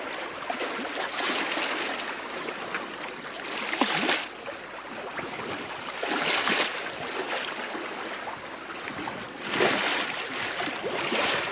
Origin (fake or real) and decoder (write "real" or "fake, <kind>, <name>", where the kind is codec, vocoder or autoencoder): real